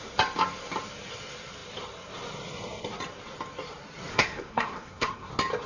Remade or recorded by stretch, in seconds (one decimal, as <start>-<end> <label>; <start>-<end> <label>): 0.0-4.1 recorded; 4.1-5.3 remade; 5.3-5.7 recorded